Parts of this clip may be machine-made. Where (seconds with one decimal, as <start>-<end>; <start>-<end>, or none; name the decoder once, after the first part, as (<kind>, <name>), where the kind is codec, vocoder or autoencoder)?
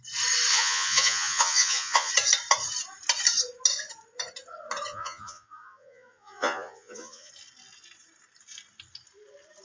0.5-2.1 (vocoder, Vocos); 4.9-7.3